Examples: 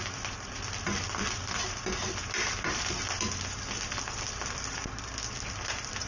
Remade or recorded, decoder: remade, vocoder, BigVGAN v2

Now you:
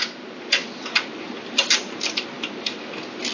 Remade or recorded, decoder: recorded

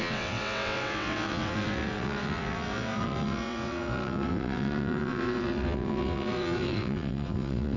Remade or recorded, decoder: remade, vocoder, WaveNeXt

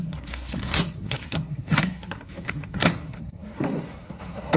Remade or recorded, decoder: remade, codec, SNAC